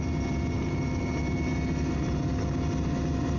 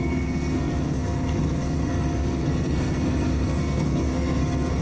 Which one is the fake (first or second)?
second